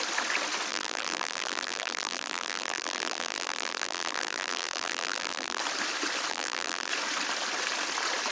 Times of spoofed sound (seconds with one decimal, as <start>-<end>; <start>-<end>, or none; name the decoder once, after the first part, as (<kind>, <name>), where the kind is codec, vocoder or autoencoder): 0.7-5.6 (vocoder, BigVGAN v2); 6.3-6.9